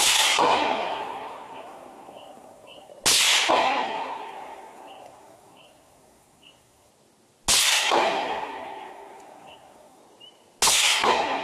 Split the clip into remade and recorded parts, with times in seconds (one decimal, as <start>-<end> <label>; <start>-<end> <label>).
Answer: 0.0-2.9 remade; 2.9-3.5 recorded; 3.5-6.9 remade; 6.9-7.6 recorded; 7.6-10.0 remade; 10.0-10.7 recorded; 10.7-11.4 remade

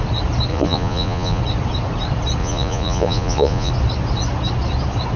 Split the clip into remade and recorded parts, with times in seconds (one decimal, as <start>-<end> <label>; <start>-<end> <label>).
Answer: 0.0-0.5 recorded; 0.5-1.4 remade; 1.4-2.4 recorded; 2.4-3.7 remade; 3.7-5.2 recorded

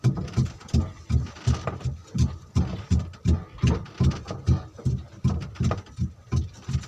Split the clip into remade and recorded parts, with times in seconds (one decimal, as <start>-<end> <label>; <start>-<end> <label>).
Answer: 0.0-6.9 recorded

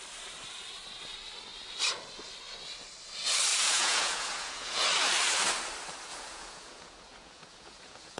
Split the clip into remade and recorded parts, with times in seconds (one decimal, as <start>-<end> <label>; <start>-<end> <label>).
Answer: 0.0-3.5 recorded; 3.5-4.8 remade; 4.8-6.1 recorded; 6.1-8.2 remade

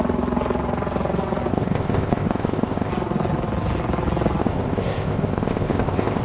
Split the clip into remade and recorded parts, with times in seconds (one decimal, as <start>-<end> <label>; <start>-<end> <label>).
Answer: 0.0-1.5 recorded; 1.5-2.9 remade; 2.9-4.4 recorded; 4.4-6.2 remade

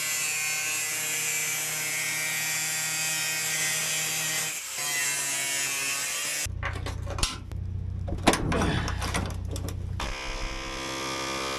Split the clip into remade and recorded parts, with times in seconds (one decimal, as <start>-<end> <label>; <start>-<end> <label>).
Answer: 0.0-11.6 recorded